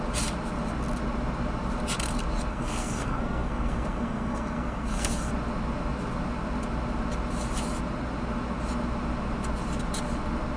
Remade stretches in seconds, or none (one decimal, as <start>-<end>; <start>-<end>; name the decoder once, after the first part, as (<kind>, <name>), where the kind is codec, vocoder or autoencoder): 2.5-5.3 (codec, SNAC)